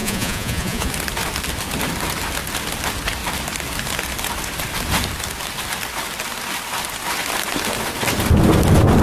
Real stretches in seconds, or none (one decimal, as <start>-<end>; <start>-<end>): 0.9-9.0